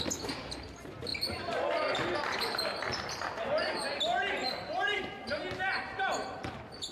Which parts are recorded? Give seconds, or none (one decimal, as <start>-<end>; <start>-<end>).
0.0-1.1; 1.7-4.4; 5.3-6.9